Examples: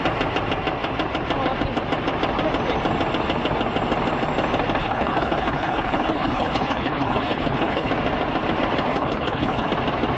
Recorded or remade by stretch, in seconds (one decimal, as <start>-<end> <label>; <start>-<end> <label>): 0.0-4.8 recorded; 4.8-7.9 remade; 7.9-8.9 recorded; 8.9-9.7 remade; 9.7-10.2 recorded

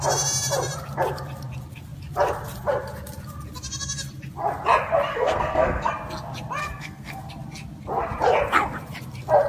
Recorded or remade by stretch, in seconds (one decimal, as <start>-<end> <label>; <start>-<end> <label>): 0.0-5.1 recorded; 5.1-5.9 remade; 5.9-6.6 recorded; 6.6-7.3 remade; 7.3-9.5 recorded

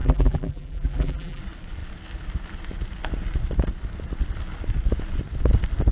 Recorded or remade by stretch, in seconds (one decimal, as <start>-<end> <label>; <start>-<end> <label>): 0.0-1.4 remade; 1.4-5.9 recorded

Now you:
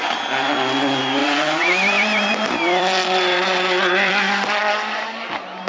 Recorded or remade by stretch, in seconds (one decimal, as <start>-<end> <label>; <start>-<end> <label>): 0.0-1.2 recorded; 1.2-4.6 remade; 4.6-5.7 recorded

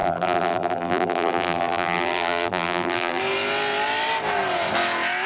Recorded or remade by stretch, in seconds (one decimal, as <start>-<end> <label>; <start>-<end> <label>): 0.0-3.2 remade; 3.2-5.3 recorded

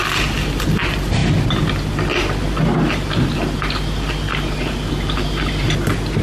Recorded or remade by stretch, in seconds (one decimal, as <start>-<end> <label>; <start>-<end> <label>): 0.0-6.2 recorded

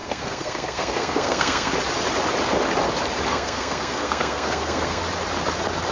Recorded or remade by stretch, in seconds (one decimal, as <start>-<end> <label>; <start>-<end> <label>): 0.0-1.7 remade; 1.7-3.3 recorded; 3.3-5.0 remade; 5.0-5.9 recorded